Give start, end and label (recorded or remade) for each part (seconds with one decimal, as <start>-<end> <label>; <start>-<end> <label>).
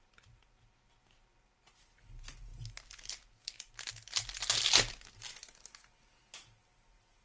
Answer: 0.0-7.2 recorded